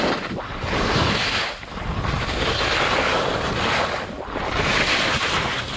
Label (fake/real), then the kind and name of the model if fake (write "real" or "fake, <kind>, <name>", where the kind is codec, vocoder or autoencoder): real